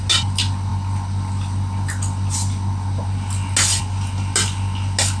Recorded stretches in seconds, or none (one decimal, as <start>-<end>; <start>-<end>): 0.0-5.2